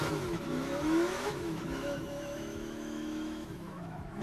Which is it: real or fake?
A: fake